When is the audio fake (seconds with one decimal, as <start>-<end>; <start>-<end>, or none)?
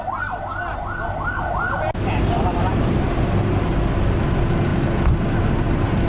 none